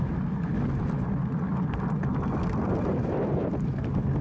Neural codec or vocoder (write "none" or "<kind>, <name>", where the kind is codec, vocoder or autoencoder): none